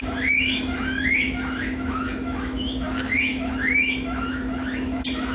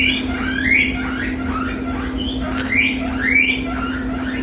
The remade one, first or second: first